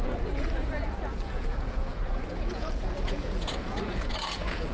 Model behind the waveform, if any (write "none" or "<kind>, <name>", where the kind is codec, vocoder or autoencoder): vocoder, Vocos